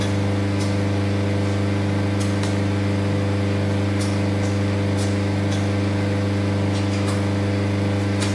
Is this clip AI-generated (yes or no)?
no